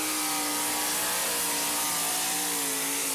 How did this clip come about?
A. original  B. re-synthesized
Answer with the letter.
A